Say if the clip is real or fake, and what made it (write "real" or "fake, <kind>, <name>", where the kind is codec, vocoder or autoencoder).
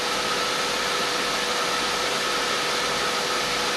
real